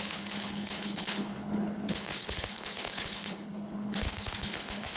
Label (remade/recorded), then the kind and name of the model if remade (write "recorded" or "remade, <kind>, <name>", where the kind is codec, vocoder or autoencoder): remade, codec, HILCodec